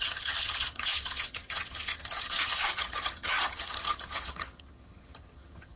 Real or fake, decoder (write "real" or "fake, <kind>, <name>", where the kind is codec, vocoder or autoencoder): fake, vocoder, HiFi-GAN